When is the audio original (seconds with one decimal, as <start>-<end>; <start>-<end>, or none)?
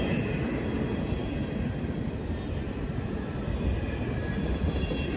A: 0.0-5.2